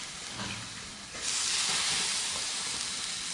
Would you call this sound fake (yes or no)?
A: no